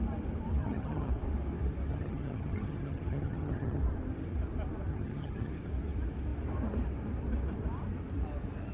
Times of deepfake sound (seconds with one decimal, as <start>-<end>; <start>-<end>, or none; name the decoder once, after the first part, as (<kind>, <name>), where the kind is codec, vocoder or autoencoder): 0.6-1.1 (vocoder, HiFi-GAN); 1.9-3.8; 4.9-5.5